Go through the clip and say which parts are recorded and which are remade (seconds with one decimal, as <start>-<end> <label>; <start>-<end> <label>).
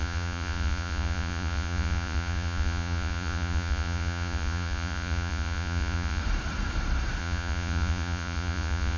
0.0-6.2 remade; 6.2-7.2 recorded; 7.2-9.0 remade